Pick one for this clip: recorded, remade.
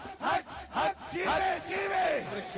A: remade